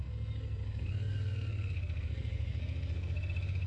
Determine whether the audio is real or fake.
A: fake